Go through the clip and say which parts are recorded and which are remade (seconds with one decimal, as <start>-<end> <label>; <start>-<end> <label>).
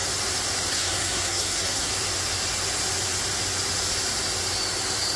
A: 0.0-0.7 recorded; 0.7-1.9 remade; 1.9-5.2 recorded